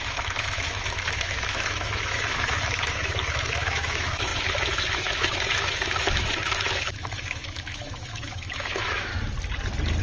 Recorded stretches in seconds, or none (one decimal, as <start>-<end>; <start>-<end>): 9.1-10.0